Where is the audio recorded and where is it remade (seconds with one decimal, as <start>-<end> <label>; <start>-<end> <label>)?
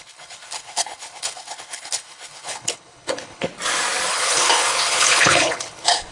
0.0-3.5 remade; 3.5-4.1 recorded; 4.1-6.1 remade